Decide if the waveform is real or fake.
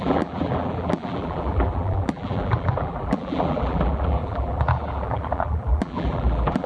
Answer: fake